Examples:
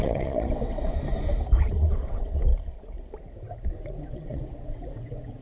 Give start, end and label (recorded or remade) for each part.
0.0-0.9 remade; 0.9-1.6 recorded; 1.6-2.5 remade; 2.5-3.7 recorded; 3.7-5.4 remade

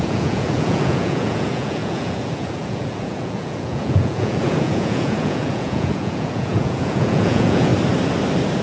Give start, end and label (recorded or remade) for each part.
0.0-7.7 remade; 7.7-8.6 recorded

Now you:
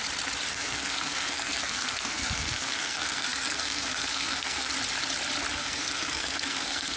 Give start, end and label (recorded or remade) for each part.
0.0-0.5 recorded; 0.5-4.7 remade; 4.7-5.6 recorded; 5.6-7.0 remade